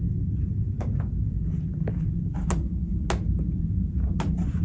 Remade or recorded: recorded